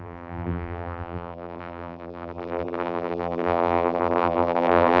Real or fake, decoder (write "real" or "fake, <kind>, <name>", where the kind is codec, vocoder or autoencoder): fake, vocoder, BigVGAN v2